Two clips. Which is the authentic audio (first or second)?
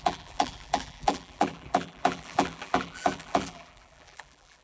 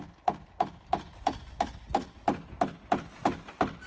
second